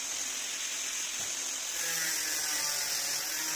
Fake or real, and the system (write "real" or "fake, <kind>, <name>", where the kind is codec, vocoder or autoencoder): real